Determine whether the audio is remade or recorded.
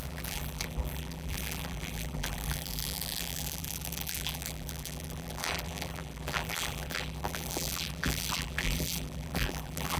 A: remade